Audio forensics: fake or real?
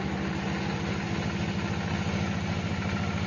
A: real